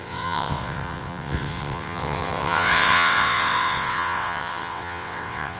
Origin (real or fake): fake